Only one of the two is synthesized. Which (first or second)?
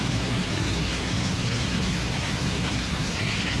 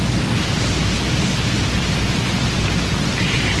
first